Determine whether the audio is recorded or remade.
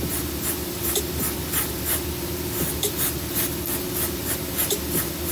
recorded